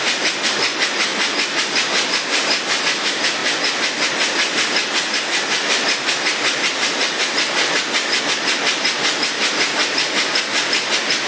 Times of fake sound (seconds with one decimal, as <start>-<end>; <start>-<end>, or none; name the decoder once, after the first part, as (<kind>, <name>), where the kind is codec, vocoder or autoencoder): none